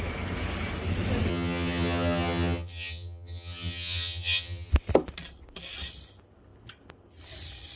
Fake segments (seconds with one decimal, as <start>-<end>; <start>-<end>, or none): 1.3-4.7

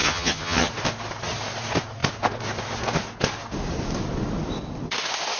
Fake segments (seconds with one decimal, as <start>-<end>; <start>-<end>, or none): 0.0-0.7

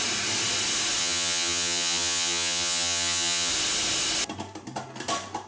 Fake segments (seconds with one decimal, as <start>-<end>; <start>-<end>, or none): 1.0-3.5

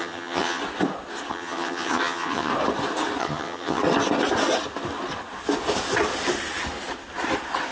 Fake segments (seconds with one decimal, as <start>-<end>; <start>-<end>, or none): 0.0-0.6; 1.3-2.5; 3.2-3.8

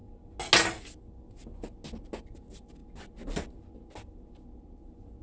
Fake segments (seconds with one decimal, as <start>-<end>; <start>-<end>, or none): none

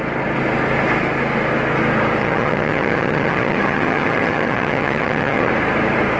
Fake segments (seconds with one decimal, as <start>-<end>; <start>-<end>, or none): 2.2-5.5

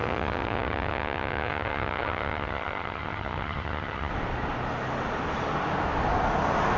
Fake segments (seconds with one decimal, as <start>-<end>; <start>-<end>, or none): 0.0-4.1